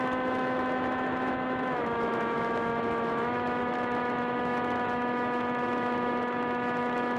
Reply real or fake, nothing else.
fake